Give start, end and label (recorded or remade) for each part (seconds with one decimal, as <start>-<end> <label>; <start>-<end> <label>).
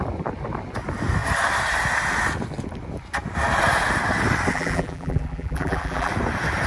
0.0-4.5 recorded; 4.5-6.1 remade; 6.1-6.7 recorded